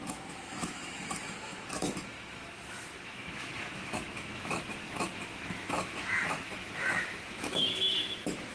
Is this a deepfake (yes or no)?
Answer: yes